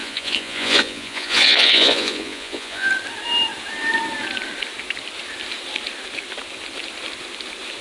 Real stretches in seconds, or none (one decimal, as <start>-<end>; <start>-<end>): 2.9-7.8